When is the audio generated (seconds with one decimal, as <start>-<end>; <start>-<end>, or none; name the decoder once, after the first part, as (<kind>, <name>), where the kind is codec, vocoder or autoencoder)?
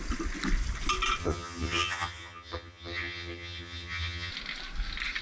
1.2-4.3 (vocoder, HiFi-GAN)